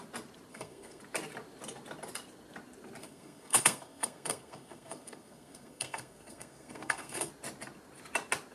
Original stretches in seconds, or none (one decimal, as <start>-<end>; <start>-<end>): 0.0-0.5; 1.0-3.0; 7.3-8.5